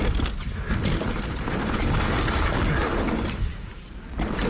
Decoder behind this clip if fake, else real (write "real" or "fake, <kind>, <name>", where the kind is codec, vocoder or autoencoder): real